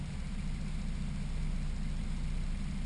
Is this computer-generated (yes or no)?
no